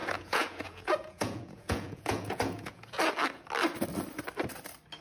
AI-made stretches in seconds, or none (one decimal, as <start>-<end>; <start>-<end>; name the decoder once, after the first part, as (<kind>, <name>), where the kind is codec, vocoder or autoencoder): 0.0-3.0 (vocoder, Vocos)